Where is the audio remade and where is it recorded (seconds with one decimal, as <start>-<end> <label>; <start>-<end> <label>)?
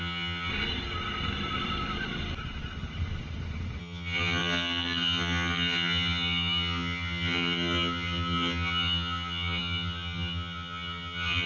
0.0-0.5 remade; 0.5-3.8 recorded; 3.8-11.5 remade